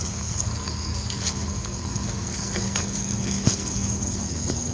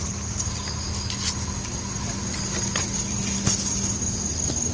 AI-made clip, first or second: first